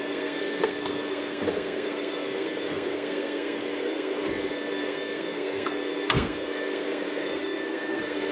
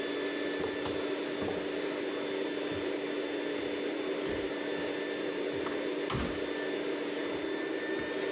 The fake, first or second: first